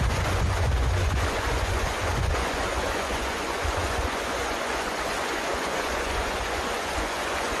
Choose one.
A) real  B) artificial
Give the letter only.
B